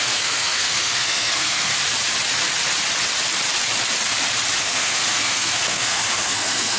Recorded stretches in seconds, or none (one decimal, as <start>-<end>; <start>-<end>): 1.7-4.6